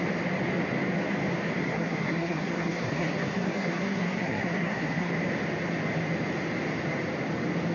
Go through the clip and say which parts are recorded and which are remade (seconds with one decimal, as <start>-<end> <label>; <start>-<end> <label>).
0.0-1.6 recorded; 1.6-5.1 remade; 5.1-7.7 recorded

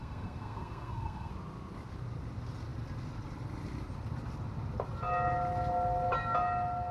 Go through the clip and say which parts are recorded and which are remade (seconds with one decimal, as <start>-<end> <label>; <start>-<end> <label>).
0.0-1.3 remade; 1.3-6.9 recorded

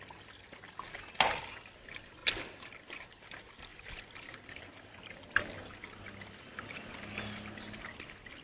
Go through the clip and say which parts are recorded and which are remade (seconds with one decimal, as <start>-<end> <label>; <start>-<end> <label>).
0.0-8.4 recorded

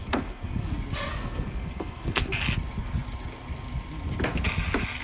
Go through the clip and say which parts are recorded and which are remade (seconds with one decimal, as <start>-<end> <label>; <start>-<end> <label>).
0.0-0.7 remade; 0.7-1.1 recorded; 1.1-2.4 remade; 2.4-5.0 recorded

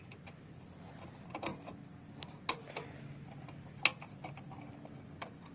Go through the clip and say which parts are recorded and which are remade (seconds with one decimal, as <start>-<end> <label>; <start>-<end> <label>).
0.0-5.5 recorded